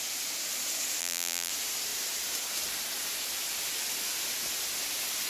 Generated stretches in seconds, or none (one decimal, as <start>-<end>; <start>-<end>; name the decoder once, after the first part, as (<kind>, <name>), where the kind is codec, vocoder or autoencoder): 1.0-1.5 (vocoder, BigVGAN v2)